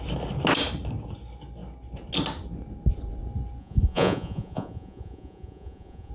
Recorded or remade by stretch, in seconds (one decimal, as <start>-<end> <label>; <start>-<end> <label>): 0.0-3.6 recorded; 3.6-6.1 remade